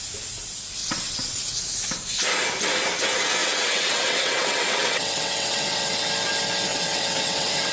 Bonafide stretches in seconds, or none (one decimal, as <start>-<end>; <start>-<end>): 0.0-0.8; 1.4-3.4; 6.1-6.7